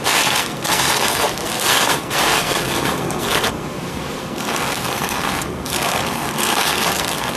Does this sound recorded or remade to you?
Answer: remade